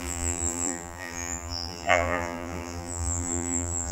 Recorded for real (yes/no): no